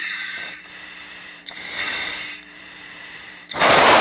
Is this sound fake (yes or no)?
yes